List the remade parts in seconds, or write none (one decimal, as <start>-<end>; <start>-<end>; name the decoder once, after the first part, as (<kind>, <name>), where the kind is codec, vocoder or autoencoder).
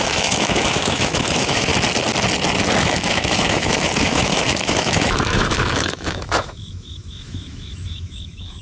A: 0.0-1.7 (autoencoder, DAC-VAE); 2.8-8.6